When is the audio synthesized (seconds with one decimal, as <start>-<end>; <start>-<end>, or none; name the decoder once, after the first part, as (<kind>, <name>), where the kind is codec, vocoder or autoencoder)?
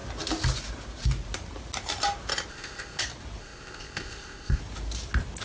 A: 2.5-3.0 (codec, ZipCodec); 3.4-4.6